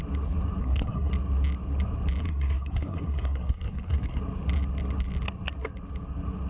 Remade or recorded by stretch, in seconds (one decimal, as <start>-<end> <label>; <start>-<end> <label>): 0.0-0.6 recorded; 0.6-1.1 remade; 1.1-2.2 recorded; 2.2-4.2 remade; 4.2-6.5 recorded

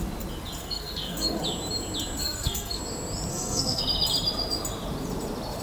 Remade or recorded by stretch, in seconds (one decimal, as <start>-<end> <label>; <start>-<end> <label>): 0.0-0.6 recorded; 0.6-1.4 remade; 1.4-2.2 recorded; 2.2-2.8 remade; 2.8-3.3 recorded; 3.3-3.8 remade; 3.8-5.6 recorded

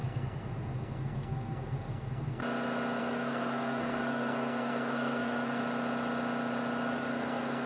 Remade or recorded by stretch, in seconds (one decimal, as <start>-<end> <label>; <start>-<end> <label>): 0.0-2.4 remade; 2.4-3.0 recorded; 3.0-5.6 remade; 5.6-7.1 recorded; 7.1-7.7 remade